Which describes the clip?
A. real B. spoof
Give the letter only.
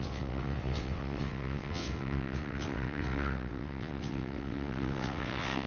B